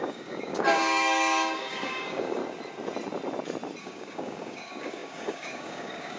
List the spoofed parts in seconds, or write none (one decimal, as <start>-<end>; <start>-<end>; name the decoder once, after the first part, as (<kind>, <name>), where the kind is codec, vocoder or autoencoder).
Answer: 0.0-2.4 (codec, DAC); 3.8-6.2